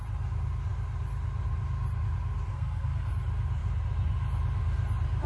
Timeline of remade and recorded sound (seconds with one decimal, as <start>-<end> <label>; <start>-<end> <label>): 0.0-2.5 recorded; 2.5-3.1 remade; 3.1-5.3 recorded

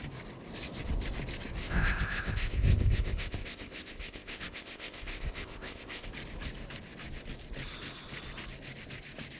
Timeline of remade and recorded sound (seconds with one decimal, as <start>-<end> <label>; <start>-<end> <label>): 0.0-1.6 recorded; 1.6-6.1 remade; 6.1-9.4 recorded

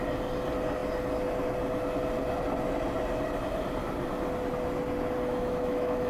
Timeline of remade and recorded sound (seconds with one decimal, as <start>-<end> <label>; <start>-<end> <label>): 0.0-5.3 recorded; 5.3-6.1 remade

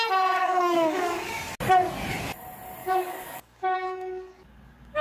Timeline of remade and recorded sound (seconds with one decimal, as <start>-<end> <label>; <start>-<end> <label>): 0.0-0.4 recorded; 0.4-1.4 remade; 1.4-2.8 recorded; 2.8-5.0 remade

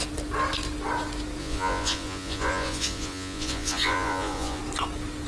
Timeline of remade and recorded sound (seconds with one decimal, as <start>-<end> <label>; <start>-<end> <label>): 0.0-1.4 recorded; 1.4-4.6 remade; 4.6-5.3 recorded

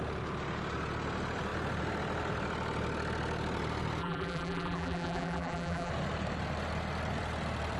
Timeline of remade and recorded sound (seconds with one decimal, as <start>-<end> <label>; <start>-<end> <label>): 0.0-4.0 recorded; 4.0-5.9 remade; 5.9-7.8 recorded

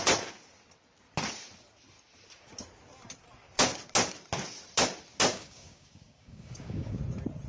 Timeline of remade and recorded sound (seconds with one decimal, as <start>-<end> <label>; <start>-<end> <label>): 0.0-5.3 recorded; 5.3-7.0 remade; 7.0-7.5 recorded